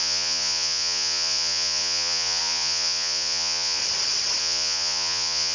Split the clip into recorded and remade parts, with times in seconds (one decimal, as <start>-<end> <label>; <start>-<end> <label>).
0.0-3.8 remade; 3.8-4.4 recorded; 4.4-5.5 remade